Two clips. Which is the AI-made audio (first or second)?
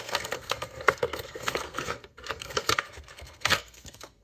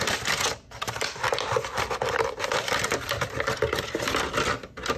first